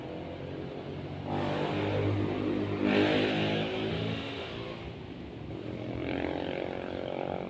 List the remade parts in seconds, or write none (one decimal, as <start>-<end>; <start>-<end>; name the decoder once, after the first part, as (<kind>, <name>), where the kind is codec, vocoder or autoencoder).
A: 3.9-4.5 (autoencoder, DAC-VAE)